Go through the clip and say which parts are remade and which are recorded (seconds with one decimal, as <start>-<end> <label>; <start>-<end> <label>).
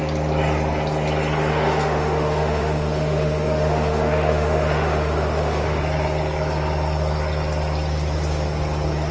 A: 0.0-1.5 recorded; 1.5-5.8 remade; 5.8-9.1 recorded